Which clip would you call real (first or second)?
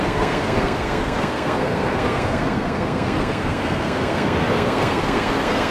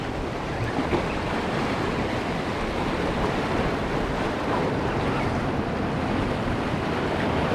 second